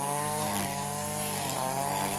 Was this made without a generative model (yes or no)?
no